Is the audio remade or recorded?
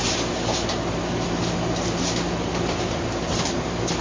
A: recorded